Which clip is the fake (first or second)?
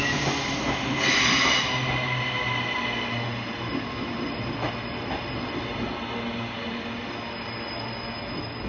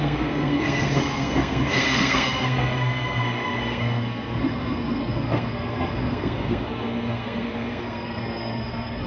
second